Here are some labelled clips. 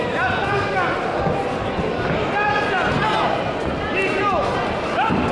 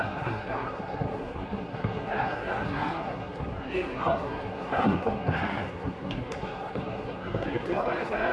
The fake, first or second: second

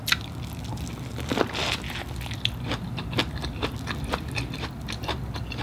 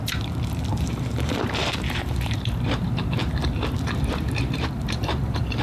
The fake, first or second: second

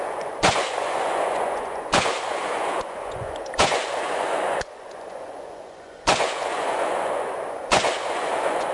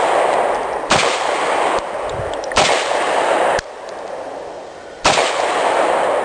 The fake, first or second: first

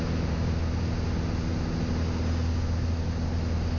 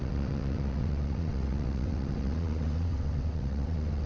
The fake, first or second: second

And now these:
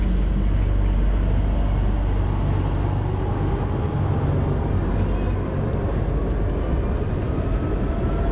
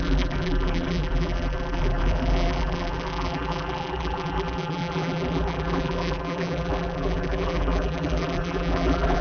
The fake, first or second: second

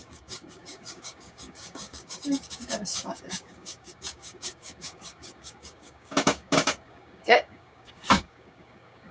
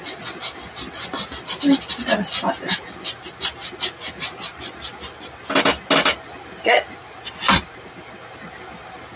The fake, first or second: first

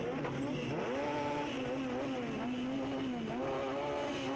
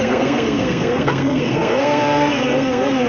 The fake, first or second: second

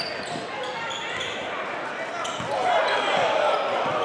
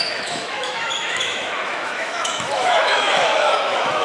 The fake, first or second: second